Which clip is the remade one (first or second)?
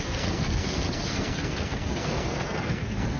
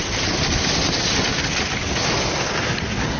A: first